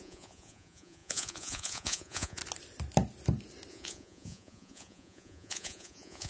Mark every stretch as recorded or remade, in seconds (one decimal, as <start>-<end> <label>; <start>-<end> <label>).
0.0-2.4 remade; 2.4-3.7 recorded; 3.7-6.3 remade